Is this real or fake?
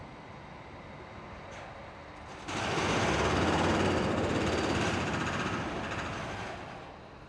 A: real